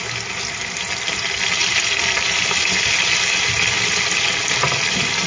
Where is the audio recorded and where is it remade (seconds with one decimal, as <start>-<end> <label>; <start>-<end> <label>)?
0.0-5.3 recorded